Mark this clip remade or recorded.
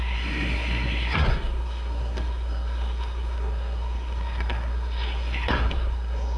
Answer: remade